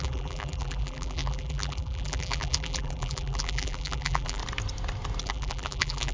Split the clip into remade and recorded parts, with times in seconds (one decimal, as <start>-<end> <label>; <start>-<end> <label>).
0.0-4.4 remade; 4.4-5.2 recorded; 5.2-6.1 remade